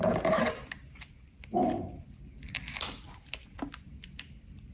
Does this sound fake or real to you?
fake